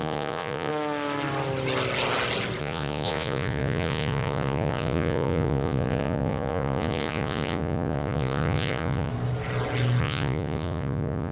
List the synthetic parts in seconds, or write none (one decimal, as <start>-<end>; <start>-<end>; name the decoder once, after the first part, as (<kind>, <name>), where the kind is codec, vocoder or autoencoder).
0.0-0.7 (vocoder, Vocos); 2.6-9.1; 10.0-11.3